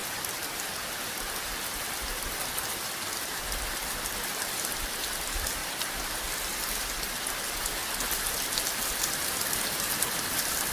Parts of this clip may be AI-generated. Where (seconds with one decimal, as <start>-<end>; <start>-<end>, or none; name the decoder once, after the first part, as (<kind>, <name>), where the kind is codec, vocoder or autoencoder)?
0.0-0.6 (vocoder, BigVGAN v2)